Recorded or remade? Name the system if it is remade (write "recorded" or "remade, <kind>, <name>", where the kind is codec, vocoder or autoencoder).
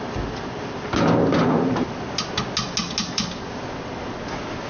recorded